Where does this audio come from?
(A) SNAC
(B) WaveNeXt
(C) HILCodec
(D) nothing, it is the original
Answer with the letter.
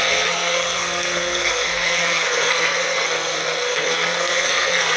A